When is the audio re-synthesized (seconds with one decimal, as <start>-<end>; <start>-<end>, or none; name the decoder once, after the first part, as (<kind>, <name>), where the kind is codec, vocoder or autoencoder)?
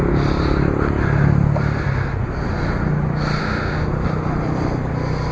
3.4-3.9 (autoencoder, DAC-VAE)